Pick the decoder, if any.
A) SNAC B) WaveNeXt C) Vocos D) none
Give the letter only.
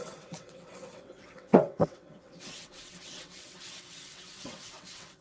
B